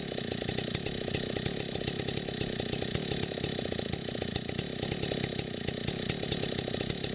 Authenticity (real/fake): real